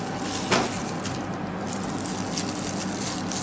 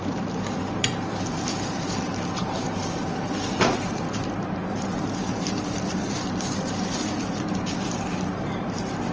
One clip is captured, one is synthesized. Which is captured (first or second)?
first